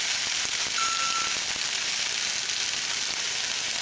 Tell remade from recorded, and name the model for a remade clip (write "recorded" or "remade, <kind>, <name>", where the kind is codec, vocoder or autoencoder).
recorded